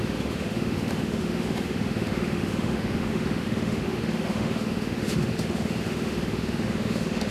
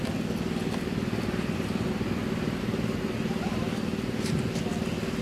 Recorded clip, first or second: second